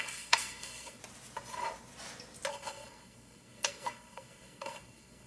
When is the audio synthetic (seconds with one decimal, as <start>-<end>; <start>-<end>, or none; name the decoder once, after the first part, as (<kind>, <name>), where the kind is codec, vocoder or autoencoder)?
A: 0.0-1.0 (codec, SNAC); 2.5-5.3